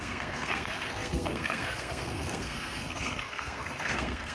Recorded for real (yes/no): no